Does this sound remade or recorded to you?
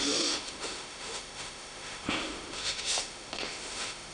remade